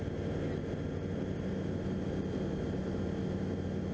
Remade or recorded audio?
recorded